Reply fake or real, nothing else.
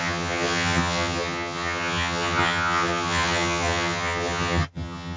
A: fake